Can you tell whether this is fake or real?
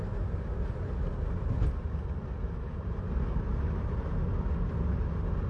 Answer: real